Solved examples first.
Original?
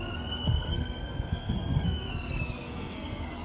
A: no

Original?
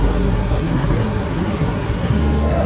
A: no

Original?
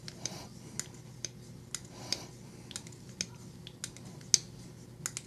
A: yes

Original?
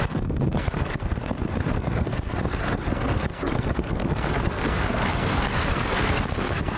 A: no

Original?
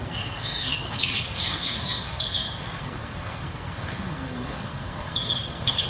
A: no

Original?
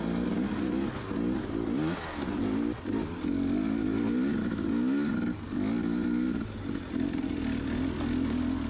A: yes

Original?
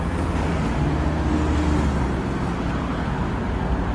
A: yes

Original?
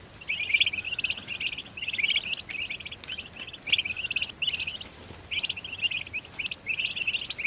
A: yes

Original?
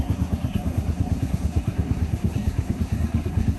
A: no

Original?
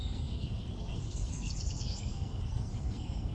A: no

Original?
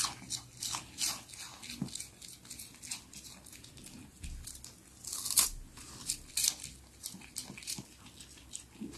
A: yes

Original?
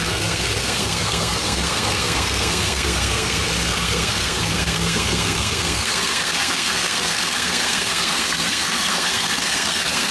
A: no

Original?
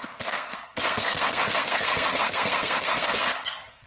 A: no